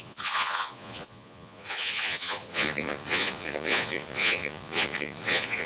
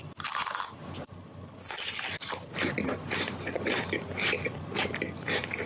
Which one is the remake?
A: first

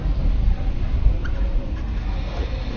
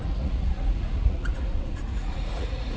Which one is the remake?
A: second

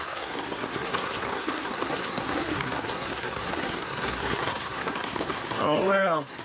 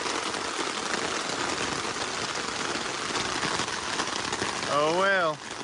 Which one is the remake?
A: first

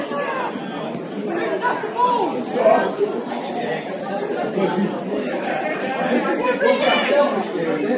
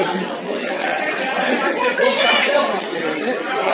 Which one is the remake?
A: second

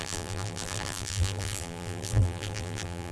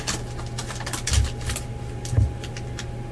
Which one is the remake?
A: first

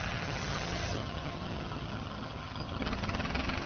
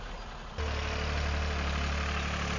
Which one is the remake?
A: first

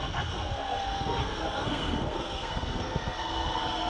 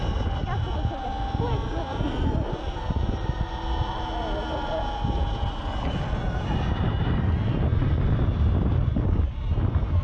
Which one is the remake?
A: first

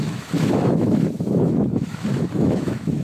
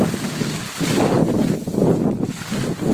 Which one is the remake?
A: first